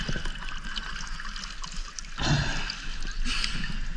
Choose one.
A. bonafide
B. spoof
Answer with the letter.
A